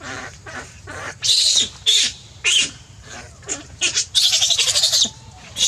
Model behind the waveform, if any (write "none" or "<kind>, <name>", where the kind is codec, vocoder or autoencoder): vocoder, BigVGAN v2